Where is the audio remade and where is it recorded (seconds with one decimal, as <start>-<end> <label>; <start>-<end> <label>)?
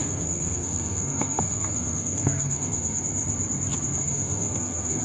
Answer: 0.0-3.0 remade; 3.0-4.0 recorded; 4.0-5.0 remade